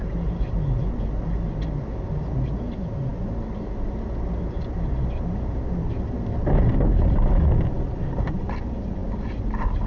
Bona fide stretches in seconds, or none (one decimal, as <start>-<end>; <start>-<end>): 0.0-9.9

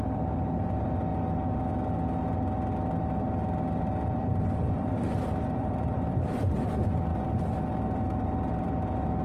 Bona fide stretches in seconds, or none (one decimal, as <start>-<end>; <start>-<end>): 1.1-4.1

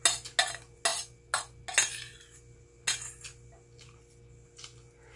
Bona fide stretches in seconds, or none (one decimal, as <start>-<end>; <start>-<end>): 0.0-5.2

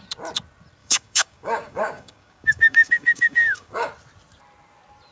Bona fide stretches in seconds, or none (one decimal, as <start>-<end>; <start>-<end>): 0.0-0.8; 3.9-5.1

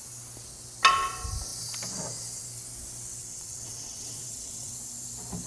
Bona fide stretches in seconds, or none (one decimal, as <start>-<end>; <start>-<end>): 0.0-3.2; 4.7-5.5